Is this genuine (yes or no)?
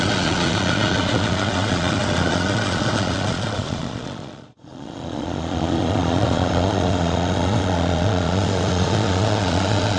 no